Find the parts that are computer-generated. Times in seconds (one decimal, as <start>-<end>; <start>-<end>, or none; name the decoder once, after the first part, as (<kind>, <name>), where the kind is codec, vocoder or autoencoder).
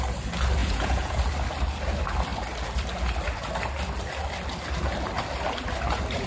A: 0.6-1.2 (vocoder, Vocos)